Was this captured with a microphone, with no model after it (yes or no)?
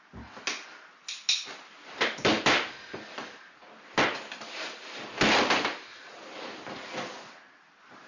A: yes